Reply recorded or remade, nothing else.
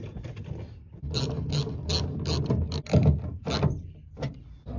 recorded